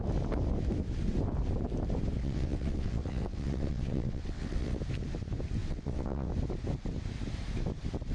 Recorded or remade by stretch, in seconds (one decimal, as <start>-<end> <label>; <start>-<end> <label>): 0.0-2.2 recorded; 2.2-4.8 remade; 4.8-5.6 recorded; 5.6-6.3 remade; 6.3-8.1 recorded